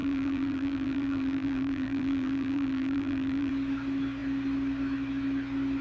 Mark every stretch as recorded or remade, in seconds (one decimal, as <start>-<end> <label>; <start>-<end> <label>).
0.0-3.5 remade; 3.5-5.8 recorded